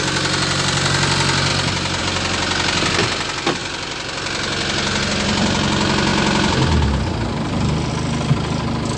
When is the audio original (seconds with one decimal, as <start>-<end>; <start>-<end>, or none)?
0.0-9.0